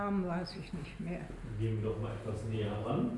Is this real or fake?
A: real